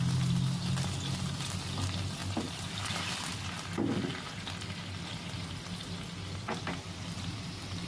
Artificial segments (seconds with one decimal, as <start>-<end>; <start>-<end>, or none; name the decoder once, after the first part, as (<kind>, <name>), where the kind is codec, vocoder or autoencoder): none